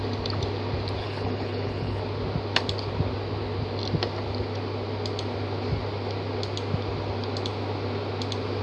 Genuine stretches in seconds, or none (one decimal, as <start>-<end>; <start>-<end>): 0.0-1.0; 2.0-8.6